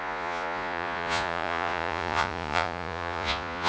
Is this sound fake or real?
fake